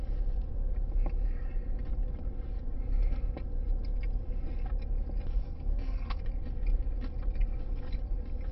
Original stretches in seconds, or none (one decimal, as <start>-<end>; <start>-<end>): 0.0-5.4; 6.2-8.5